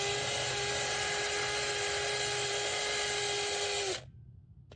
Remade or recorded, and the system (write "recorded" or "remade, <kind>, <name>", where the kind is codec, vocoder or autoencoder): recorded